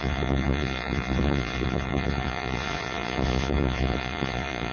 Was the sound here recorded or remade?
remade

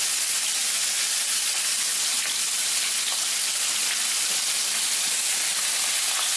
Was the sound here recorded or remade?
recorded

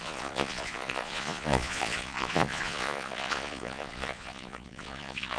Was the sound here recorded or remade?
remade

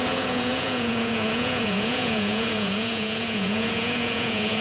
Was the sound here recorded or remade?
remade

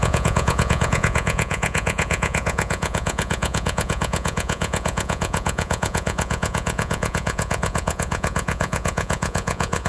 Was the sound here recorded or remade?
remade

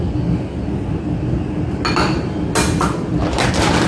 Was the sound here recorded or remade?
recorded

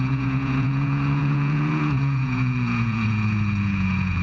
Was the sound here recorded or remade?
remade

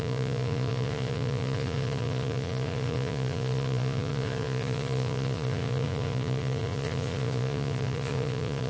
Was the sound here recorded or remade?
remade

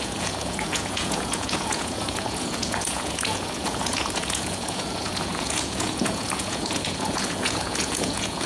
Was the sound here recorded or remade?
remade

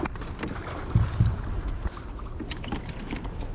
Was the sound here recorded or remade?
recorded